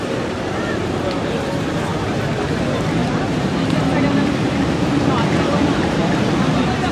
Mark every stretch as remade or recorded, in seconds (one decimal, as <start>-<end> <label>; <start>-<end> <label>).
0.0-6.9 remade